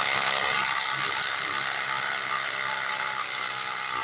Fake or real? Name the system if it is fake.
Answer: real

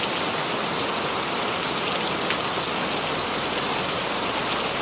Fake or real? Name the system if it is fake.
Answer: real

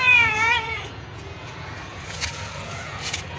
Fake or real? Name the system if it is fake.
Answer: fake, vocoder, Vocos